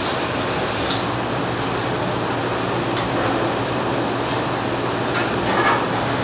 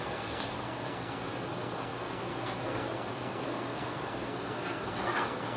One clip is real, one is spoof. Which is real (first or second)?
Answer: first